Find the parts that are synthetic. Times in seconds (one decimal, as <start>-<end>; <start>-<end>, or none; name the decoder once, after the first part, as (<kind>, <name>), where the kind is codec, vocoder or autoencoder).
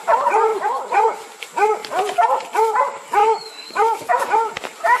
3.2-4.2 (autoencoder, DAC-VAE)